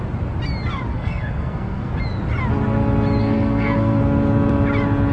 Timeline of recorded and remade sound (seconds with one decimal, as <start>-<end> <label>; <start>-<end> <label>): 0.0-0.9 recorded; 0.9-1.9 remade; 1.9-3.2 recorded; 3.2-4.0 remade; 4.0-5.1 recorded